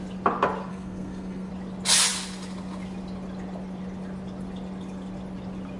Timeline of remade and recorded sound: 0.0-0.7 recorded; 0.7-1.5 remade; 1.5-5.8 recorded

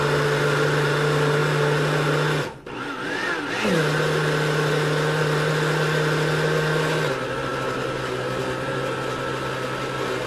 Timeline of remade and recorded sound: 0.0-10.3 recorded

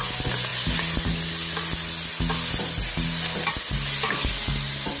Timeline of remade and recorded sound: 0.0-5.0 recorded

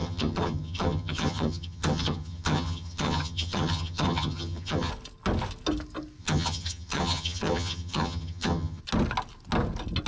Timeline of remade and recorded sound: 0.0-4.9 remade; 4.9-6.2 recorded; 6.2-8.8 remade; 8.8-10.1 recorded